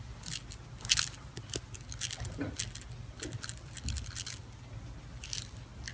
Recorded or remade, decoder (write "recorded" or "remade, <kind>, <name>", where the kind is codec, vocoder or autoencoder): recorded